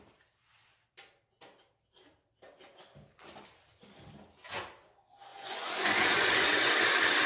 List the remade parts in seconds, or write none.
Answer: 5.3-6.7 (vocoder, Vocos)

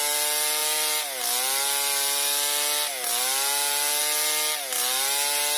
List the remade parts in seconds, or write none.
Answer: none